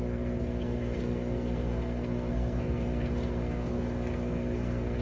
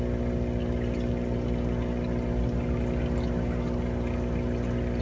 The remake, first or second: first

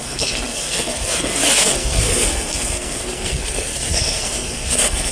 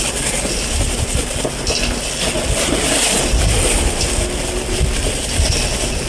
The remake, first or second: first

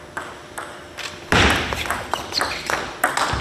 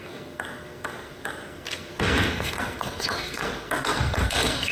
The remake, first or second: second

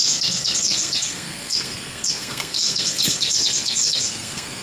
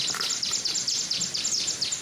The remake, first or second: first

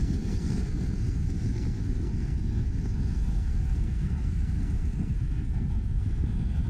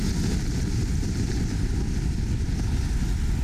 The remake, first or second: first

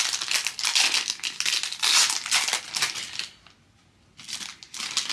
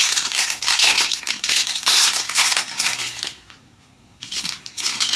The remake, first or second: second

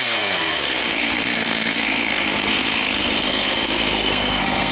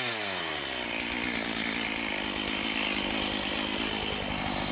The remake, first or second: first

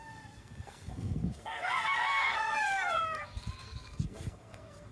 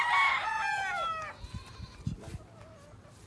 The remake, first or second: first